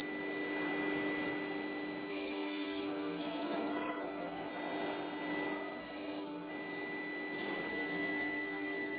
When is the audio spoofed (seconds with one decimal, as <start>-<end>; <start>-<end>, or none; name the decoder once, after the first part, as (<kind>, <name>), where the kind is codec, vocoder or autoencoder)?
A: 2.1-4.5 (codec, SNAC); 5.8-6.5; 7.7-9.0